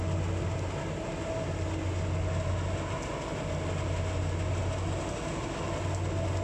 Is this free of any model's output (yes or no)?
yes